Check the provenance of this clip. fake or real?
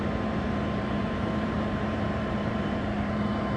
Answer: fake